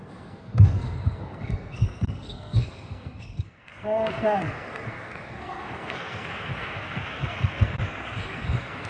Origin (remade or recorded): remade